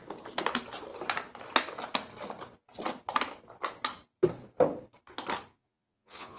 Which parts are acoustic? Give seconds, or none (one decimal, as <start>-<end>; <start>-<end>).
0.0-5.5